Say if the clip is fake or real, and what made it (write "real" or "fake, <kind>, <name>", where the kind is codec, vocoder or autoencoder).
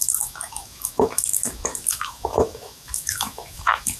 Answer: fake, autoencoder, DAC-VAE